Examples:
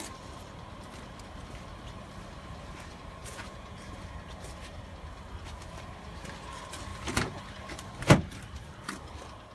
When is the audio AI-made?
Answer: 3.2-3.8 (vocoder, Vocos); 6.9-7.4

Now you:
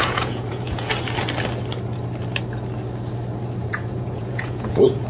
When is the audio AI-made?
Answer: 0.0-0.9 (vocoder, Vocos); 3.7-5.1

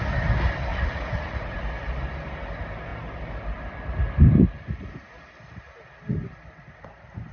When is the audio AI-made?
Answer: 0.7-1.6 (vocoder, Vocos)